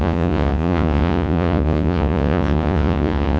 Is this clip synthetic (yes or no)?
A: yes